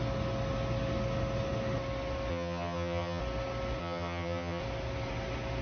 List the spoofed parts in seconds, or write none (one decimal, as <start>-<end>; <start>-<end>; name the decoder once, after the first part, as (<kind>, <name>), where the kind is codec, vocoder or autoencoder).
2.3-3.2 (vocoder, HiFi-GAN); 3.8-4.6